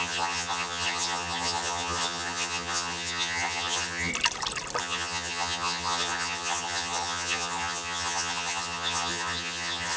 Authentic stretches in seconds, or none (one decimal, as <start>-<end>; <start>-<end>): 4.1-4.8